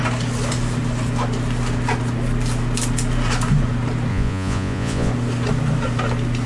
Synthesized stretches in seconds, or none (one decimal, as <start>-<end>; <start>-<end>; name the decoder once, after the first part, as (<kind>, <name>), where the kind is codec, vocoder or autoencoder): 4.1-5.1 (vocoder, Vocos)